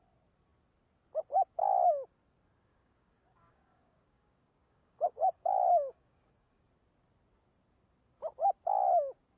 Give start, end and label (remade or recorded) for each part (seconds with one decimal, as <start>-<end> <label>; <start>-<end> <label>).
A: 0.0-2.7 recorded; 2.7-6.6 remade; 6.6-9.4 recorded